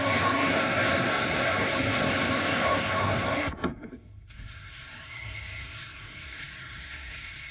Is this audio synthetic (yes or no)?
yes